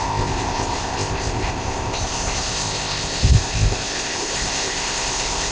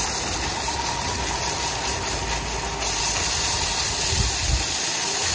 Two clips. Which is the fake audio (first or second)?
first